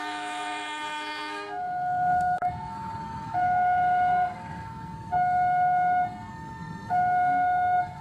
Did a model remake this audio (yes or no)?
yes